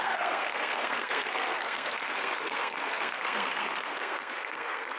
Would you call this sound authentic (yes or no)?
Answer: no